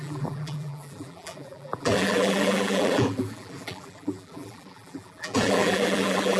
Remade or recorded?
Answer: remade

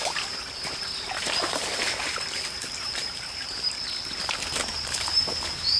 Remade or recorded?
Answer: remade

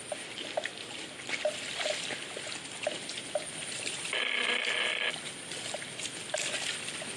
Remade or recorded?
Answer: recorded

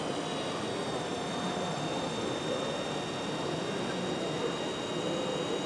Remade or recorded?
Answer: recorded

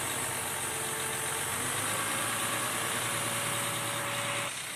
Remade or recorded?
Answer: recorded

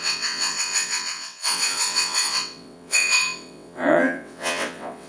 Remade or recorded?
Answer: remade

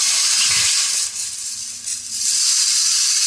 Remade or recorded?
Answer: remade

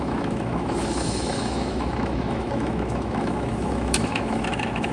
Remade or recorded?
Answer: remade